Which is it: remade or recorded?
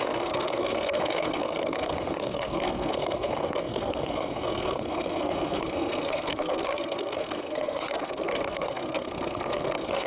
remade